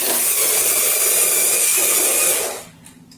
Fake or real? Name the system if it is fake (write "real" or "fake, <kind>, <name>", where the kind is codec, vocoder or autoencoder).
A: real